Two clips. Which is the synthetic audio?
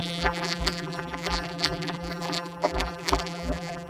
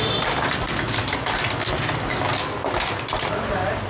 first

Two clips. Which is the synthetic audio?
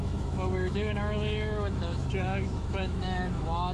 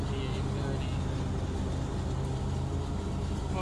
first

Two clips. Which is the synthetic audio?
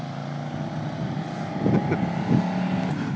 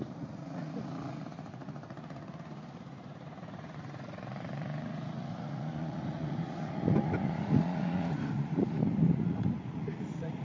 second